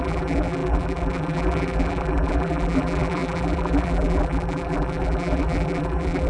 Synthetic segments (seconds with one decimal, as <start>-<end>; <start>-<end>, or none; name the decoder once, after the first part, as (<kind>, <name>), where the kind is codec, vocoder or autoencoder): 0.0-6.3 (vocoder, BigVGAN v2)